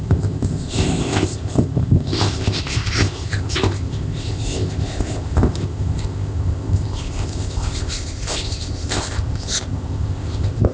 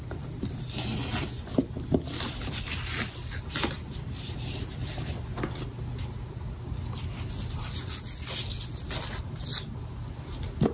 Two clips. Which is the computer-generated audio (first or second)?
first